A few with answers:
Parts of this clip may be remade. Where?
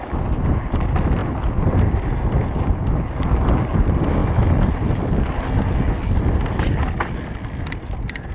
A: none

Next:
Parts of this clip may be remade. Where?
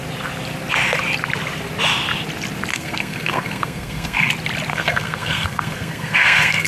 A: 2.7-4.3 (codec, SNAC); 4.7-6.7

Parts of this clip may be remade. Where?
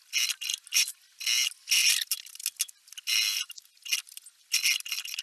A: none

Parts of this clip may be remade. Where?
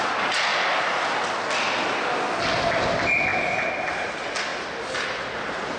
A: none